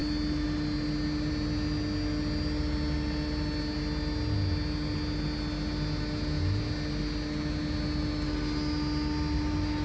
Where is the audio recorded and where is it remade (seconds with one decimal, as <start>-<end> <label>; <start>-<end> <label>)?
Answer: 0.0-9.8 recorded